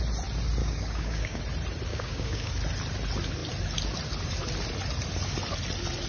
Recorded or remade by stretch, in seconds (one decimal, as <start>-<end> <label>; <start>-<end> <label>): 0.0-0.6 recorded; 0.6-1.4 remade; 1.4-1.9 recorded; 1.9-2.5 remade; 2.5-6.1 recorded